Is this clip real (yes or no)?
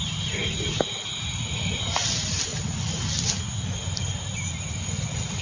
yes